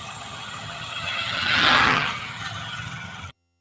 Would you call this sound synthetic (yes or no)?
yes